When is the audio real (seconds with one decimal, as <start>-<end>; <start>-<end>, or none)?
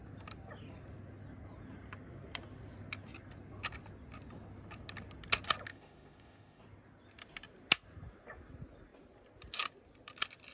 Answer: 0.0-5.7; 6.6-10.5